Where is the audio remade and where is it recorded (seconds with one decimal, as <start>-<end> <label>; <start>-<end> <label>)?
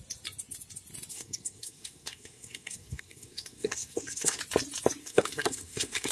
0.0-1.1 recorded; 1.1-4.4 remade; 4.4-5.0 recorded; 5.0-6.1 remade